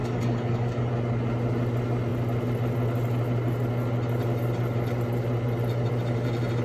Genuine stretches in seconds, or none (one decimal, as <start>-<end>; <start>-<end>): 0.9-6.6